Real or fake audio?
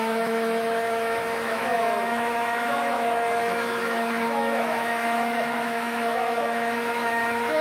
fake